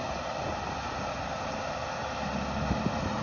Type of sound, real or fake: real